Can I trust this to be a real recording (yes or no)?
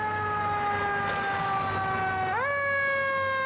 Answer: yes